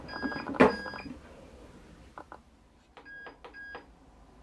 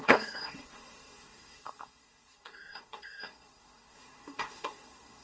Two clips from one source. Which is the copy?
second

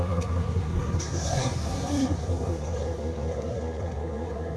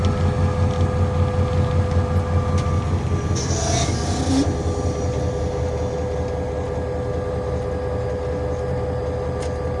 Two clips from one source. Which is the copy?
first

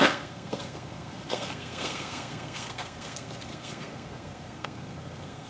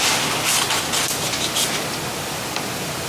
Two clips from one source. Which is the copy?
first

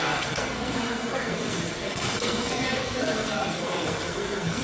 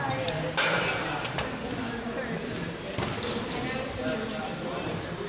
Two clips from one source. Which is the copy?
first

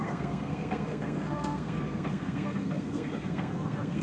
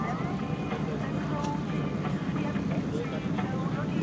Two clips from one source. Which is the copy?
first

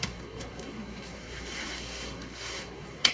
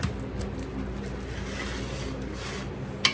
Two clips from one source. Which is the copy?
first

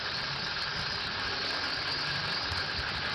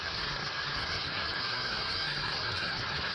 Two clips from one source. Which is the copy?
second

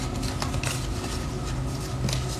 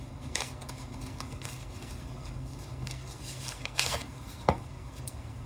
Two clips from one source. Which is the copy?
second